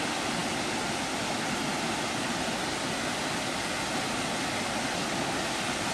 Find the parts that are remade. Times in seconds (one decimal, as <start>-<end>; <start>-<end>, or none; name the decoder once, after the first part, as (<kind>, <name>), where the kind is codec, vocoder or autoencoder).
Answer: none